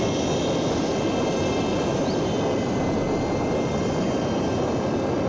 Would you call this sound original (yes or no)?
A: yes